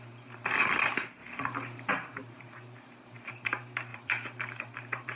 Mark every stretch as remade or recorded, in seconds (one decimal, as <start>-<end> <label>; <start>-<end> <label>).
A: 0.0-1.2 remade; 1.2-1.9 recorded; 1.9-5.2 remade